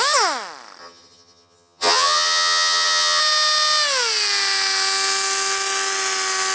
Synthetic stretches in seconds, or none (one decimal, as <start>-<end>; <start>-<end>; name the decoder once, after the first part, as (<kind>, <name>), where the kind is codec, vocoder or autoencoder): 0.8-3.2 (vocoder, HiFi-GAN)